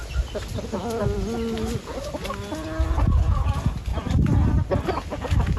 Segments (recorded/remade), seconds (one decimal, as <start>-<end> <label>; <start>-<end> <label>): 0.0-3.9 recorded; 3.9-5.6 remade

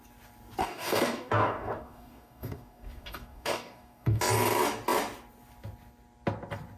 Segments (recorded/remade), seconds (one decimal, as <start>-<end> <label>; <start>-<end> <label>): 0.0-0.6 recorded; 0.6-4.2 remade; 4.2-6.8 recorded

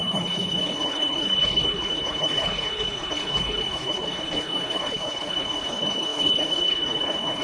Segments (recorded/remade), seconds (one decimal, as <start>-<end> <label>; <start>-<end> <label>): 0.0-7.4 remade

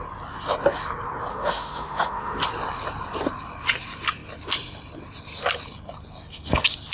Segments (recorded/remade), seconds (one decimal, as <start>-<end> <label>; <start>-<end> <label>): 0.0-1.3 recorded; 1.3-2.4 remade; 2.4-6.9 recorded

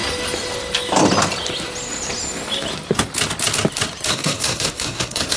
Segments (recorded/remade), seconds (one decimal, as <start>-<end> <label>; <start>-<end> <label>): 0.0-4.1 recorded; 4.1-5.4 remade

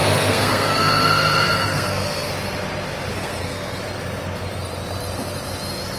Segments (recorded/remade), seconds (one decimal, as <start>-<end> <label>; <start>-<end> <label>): 0.0-2.3 remade; 2.3-3.1 recorded; 3.1-3.8 remade; 3.8-6.0 recorded